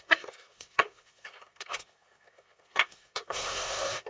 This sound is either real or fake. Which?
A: fake